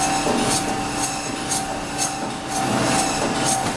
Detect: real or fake real